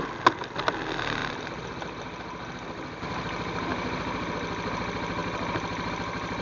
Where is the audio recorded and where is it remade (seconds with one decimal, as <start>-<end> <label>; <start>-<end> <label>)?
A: 0.0-3.7 recorded; 3.7-4.3 remade; 4.3-6.4 recorded